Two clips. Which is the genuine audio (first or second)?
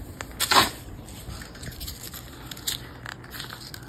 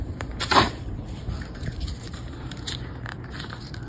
first